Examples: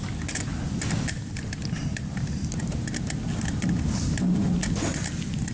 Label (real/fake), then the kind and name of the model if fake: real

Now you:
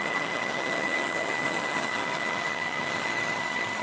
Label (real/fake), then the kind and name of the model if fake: fake, vocoder, HiFi-GAN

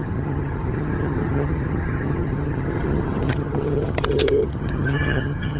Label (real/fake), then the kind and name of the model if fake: fake, vocoder, HiFi-GAN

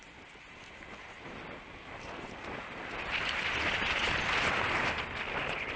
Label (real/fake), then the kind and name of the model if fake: real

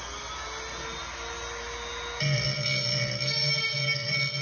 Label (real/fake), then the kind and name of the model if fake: real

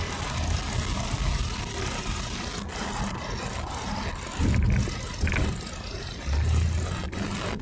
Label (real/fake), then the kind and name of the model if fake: real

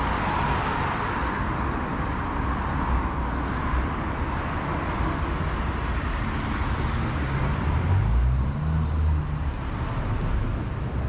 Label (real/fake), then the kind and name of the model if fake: real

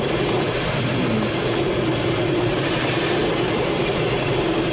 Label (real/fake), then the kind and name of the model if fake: real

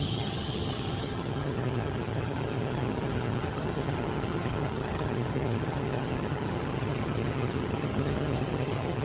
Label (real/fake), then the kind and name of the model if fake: fake, vocoder, HiFi-GAN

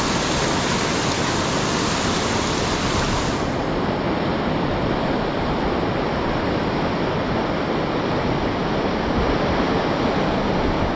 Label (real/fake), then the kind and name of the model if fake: real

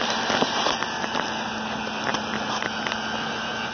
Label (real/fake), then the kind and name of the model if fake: real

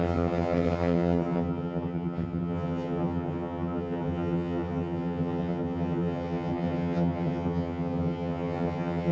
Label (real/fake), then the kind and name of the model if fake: fake, vocoder, HiFi-GAN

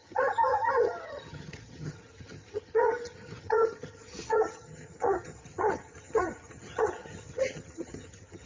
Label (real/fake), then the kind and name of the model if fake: fake, vocoder, HiFi-GAN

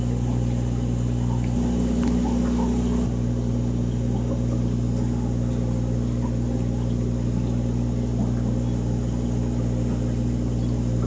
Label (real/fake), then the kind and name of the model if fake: real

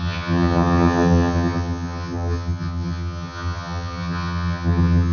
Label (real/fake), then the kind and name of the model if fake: fake, vocoder, HiFi-GAN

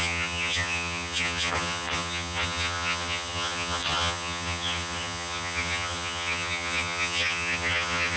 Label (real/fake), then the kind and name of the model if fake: fake, vocoder, HiFi-GAN